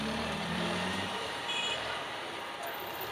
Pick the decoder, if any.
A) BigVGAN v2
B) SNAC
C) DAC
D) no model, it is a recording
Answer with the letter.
A